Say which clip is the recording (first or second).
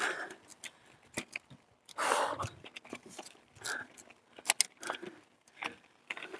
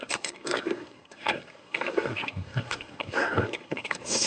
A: first